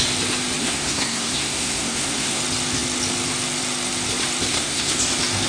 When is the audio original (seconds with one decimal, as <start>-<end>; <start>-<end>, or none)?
0.0-0.6; 2.4-4.5; 5.0-5.5